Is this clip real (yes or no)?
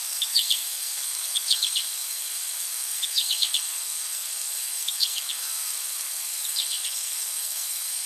no